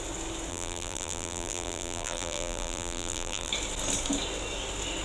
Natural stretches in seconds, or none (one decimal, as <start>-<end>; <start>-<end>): 0.0-0.5; 3.5-5.0